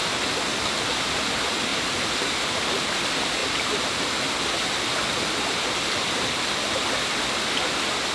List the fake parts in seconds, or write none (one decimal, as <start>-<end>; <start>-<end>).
none